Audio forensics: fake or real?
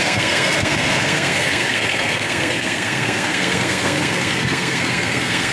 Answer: fake